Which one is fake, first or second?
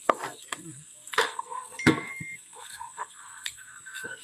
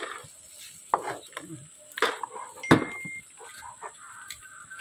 first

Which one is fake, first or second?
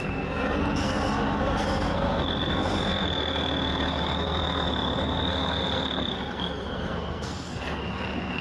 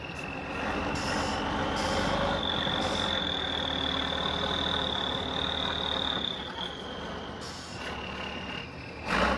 first